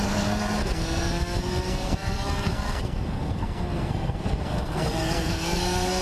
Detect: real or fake fake